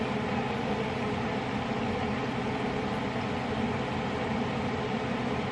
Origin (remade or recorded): recorded